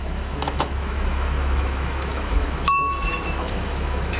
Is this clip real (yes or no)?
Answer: no